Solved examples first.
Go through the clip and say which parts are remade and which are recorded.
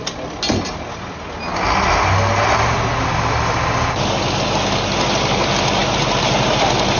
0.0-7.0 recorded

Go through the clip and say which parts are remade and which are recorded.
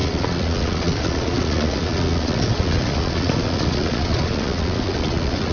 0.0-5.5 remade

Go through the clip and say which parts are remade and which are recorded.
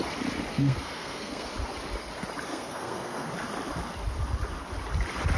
0.0-0.5 recorded; 0.5-1.5 remade; 1.5-2.5 recorded; 2.5-3.3 remade; 3.3-5.4 recorded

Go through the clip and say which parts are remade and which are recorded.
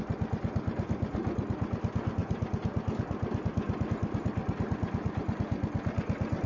0.0-6.5 recorded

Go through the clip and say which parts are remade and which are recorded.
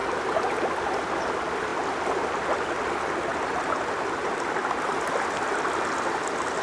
0.0-6.6 recorded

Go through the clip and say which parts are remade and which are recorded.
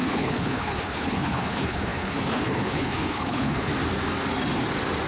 0.0-3.7 remade; 3.7-5.1 recorded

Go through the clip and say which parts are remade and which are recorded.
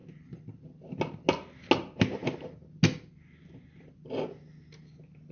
0.0-5.3 recorded